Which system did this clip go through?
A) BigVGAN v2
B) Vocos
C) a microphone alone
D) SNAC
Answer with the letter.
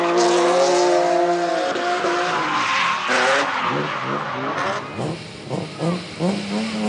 C